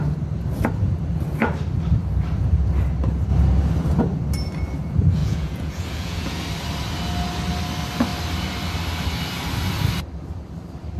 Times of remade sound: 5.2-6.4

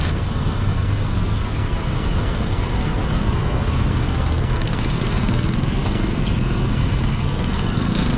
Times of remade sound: 0.0-8.2

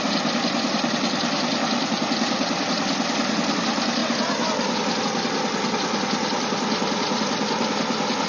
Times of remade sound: none

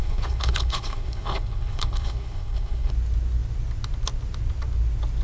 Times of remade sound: 0.0-2.9

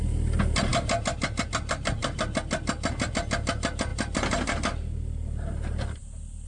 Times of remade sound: 3.9-6.5